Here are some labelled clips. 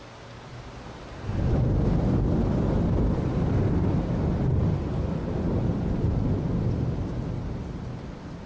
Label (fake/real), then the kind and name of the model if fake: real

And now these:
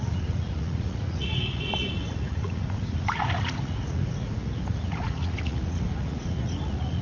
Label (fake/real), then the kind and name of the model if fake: fake, vocoder, Vocos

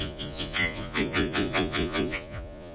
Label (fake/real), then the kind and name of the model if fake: fake, vocoder, Vocos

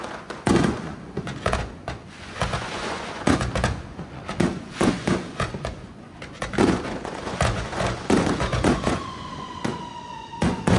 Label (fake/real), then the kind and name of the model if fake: fake, vocoder, Vocos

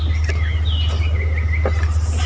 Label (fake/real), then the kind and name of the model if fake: real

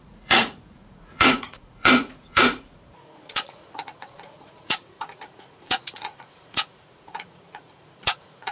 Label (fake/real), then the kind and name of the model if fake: fake, vocoder, Vocos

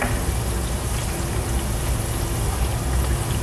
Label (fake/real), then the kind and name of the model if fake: real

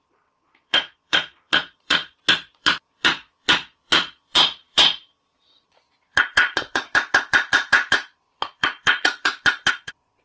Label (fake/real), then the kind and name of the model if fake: fake, vocoder, Vocos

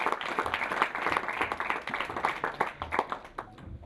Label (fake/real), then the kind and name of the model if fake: real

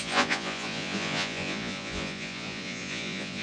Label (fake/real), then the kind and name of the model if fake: fake, vocoder, Vocos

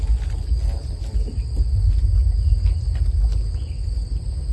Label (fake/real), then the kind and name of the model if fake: real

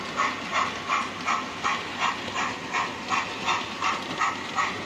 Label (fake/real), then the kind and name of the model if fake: real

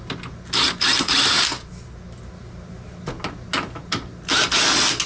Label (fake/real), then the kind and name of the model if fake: real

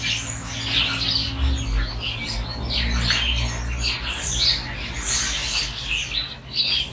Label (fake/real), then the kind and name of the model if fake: real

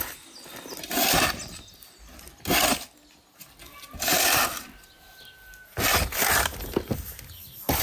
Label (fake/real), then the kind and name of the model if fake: real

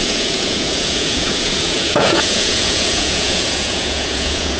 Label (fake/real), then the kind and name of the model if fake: fake, vocoder, Vocos